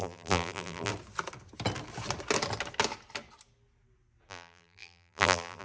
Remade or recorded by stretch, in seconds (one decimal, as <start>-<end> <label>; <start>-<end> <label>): 0.0-0.9 remade; 0.9-4.3 recorded; 4.3-5.6 remade